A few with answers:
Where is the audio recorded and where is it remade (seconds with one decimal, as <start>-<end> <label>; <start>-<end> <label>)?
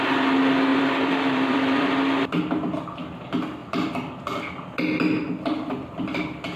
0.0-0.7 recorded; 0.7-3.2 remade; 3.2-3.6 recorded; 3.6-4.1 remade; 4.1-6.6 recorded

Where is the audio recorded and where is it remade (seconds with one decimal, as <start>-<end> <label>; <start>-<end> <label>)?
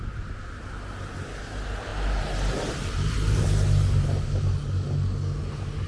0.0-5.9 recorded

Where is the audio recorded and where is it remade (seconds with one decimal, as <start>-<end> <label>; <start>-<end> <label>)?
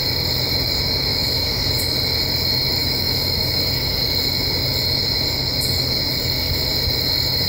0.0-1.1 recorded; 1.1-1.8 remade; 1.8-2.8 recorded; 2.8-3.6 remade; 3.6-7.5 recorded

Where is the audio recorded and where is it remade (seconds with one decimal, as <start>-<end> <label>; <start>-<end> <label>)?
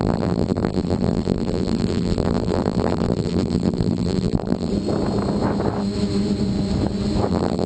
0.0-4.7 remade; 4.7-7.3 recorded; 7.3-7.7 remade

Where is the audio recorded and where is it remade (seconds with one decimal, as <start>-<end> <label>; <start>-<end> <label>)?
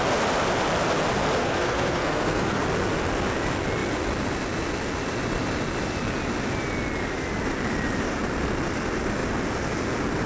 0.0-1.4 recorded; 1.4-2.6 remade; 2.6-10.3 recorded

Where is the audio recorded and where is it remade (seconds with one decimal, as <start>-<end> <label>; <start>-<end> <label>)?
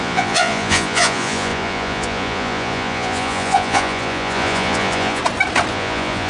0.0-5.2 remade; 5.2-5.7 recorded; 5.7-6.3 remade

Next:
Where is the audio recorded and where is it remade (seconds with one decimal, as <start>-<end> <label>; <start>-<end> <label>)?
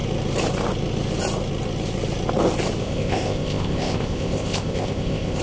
0.0-2.8 recorded; 2.8-5.4 remade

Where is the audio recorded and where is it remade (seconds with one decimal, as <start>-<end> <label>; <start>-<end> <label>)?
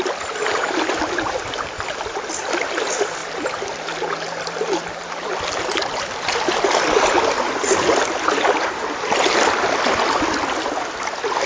0.0-11.5 recorded